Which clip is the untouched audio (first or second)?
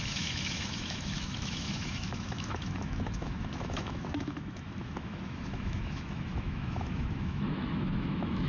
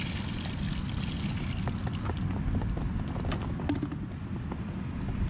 second